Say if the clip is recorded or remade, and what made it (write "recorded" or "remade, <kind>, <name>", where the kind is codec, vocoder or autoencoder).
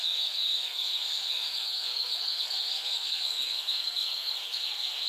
remade, codec, SNAC